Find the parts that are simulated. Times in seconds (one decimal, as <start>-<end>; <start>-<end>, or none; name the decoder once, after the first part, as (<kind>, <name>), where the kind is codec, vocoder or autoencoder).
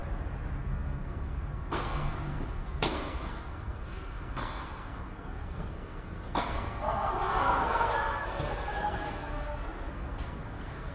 0.6-10.9 (codec, SNAC)